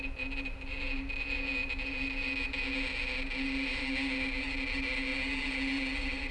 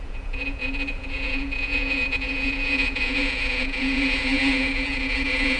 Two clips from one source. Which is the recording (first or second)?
first